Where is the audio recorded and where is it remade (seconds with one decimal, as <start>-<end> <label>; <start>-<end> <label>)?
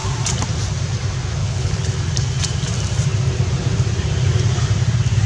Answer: 0.0-1.4 recorded; 1.4-1.9 remade; 1.9-5.3 recorded